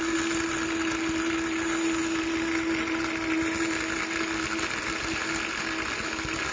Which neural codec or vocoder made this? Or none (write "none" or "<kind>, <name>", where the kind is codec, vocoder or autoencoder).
none